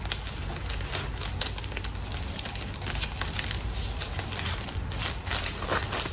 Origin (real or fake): real